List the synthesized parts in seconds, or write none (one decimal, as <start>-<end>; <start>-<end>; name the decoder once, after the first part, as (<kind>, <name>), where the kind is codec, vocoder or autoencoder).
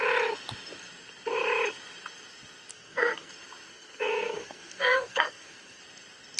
2.7-3.3 (codec, SNAC); 3.7-5.8